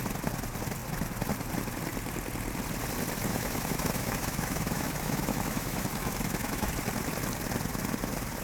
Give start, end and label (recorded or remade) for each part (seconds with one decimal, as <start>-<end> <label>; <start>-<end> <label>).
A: 0.0-3.3 recorded; 3.3-6.7 remade; 6.7-8.4 recorded